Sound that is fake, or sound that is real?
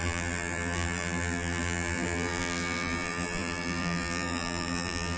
fake